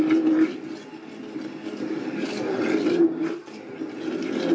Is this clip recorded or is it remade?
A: recorded